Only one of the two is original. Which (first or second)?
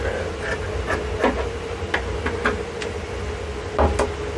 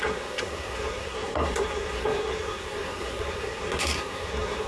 first